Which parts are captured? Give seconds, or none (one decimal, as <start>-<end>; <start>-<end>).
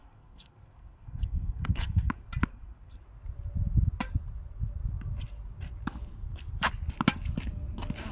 2.1-2.5; 3.0-8.1